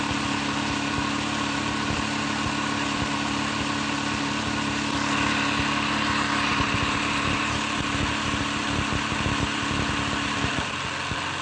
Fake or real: real